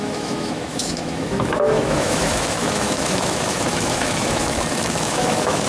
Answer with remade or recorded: remade